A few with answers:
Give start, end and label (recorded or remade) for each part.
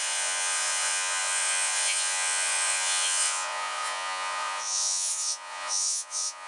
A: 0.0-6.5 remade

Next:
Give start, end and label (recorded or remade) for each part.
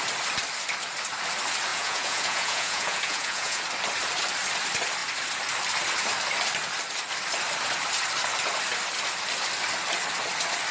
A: 0.0-1.7 recorded; 1.7-3.6 remade; 3.6-10.7 recorded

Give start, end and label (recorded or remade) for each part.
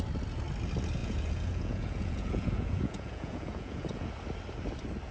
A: 0.0-1.0 recorded; 1.0-4.1 remade; 4.1-5.1 recorded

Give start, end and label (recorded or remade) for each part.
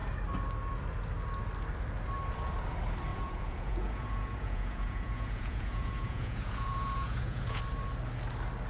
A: 0.0-3.1 recorded; 3.1-7.6 remade; 7.6-8.7 recorded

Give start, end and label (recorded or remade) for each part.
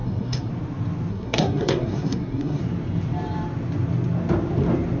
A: 0.0-0.5 remade; 0.5-1.1 recorded; 1.1-2.6 remade; 2.6-5.0 recorded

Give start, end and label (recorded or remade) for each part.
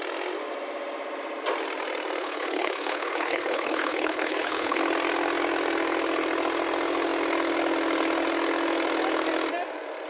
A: 0.0-2.2 recorded; 2.2-4.8 remade; 4.8-10.1 recorded